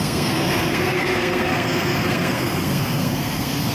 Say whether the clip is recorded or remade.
remade